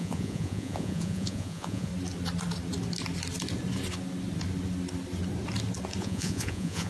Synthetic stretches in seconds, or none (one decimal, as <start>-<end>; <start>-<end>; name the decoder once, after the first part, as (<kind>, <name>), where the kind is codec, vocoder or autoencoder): 0.0-1.9 (vocoder, Vocos); 6.0-6.9